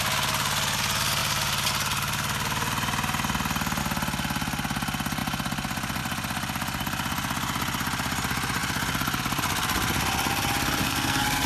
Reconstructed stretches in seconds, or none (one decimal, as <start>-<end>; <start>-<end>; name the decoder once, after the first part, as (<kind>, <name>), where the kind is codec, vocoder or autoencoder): 10.8-11.5 (codec, SNAC)